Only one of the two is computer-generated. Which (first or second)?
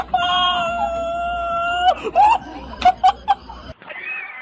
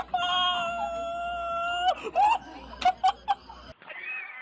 first